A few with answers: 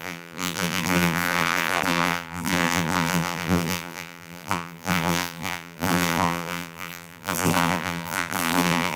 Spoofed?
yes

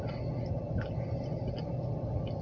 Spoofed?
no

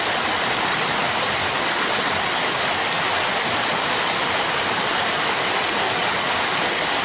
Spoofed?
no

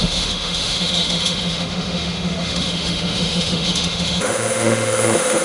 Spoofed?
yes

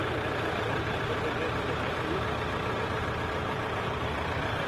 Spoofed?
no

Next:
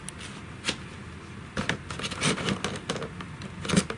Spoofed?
no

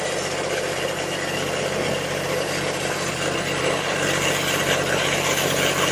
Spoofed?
yes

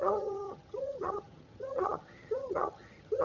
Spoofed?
yes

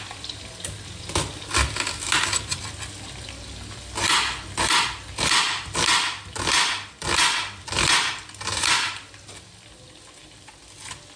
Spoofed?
no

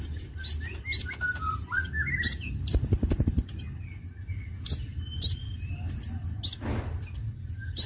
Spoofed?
no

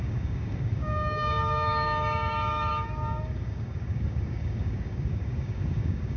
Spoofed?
yes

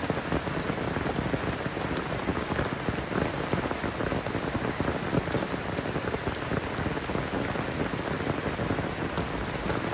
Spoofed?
no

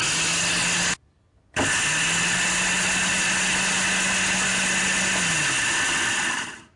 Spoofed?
no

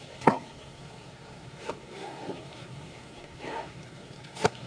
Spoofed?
yes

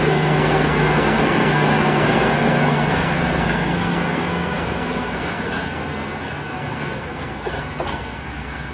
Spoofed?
yes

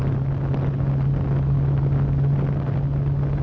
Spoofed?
no